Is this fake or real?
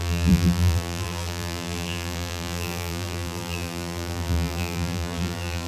fake